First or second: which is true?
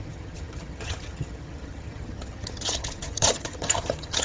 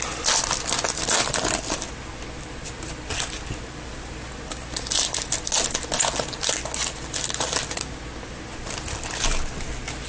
second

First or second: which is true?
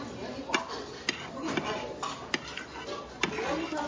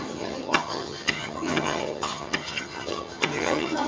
first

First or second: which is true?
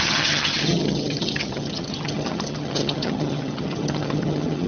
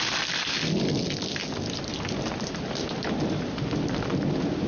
second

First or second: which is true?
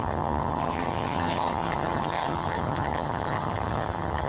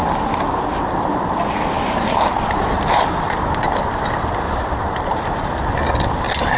second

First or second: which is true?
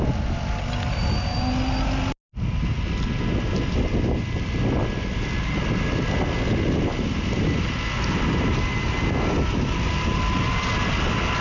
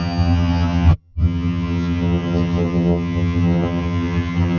first